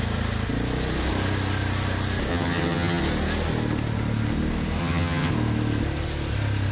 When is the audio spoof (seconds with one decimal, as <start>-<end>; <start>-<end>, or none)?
2.3-3.0; 4.8-5.3